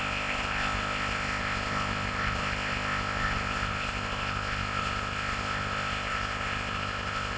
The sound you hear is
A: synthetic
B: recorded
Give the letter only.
A